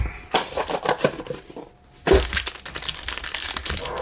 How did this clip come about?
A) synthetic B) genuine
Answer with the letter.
B